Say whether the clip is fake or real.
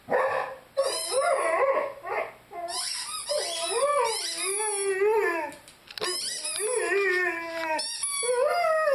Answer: real